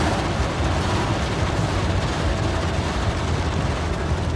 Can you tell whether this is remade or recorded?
recorded